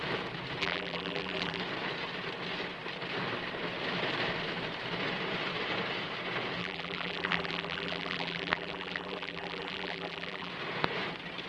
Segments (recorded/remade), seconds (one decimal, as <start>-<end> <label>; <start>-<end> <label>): 0.0-0.6 recorded; 0.6-1.6 remade; 1.6-6.6 recorded; 6.6-10.5 remade; 10.5-11.5 recorded